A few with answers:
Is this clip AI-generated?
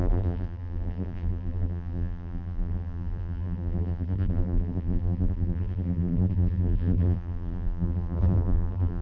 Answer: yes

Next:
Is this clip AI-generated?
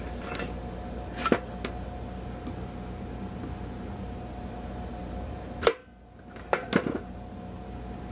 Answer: no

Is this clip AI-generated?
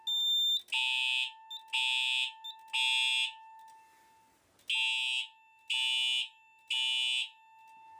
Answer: no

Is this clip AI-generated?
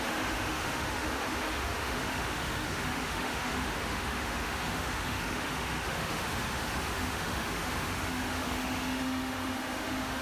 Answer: yes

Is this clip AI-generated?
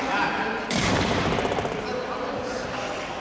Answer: no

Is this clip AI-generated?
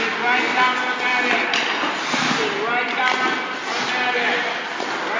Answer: no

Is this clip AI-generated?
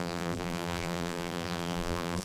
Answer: yes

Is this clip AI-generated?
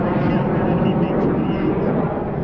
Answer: no